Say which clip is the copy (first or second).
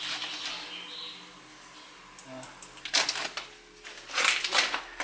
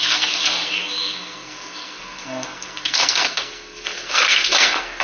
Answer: second